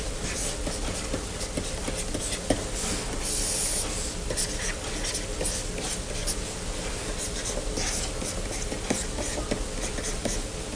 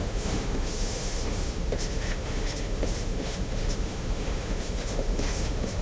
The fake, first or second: second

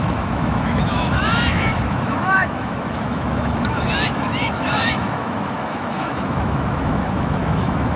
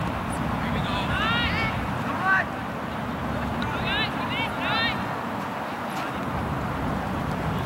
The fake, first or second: first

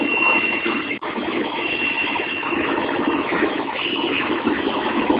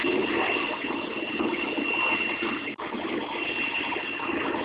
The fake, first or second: first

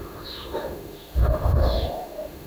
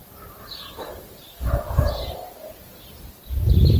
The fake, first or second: first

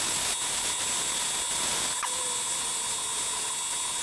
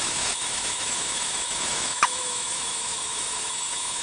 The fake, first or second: second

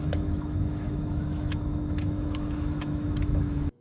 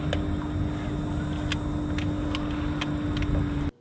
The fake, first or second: first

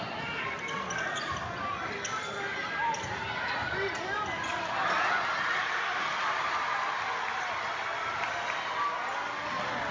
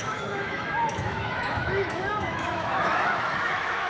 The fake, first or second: second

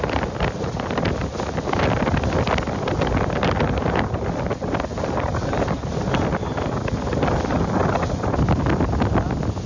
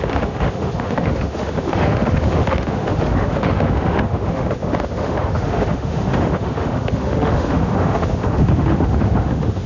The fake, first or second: second